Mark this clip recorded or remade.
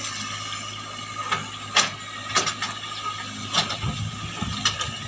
recorded